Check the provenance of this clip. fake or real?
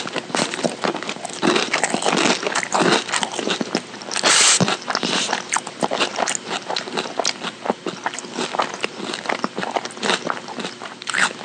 real